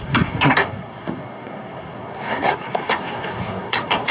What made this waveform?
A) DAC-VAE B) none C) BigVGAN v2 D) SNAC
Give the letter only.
D